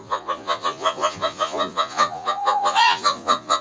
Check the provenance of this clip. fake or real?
fake